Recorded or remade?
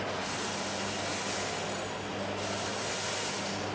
recorded